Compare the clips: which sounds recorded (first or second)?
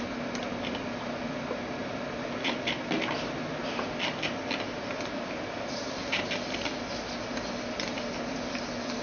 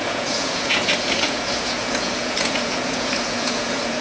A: first